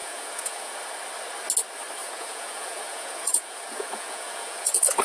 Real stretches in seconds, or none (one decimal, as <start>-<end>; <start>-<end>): 0.7-2.0